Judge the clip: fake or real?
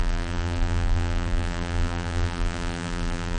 fake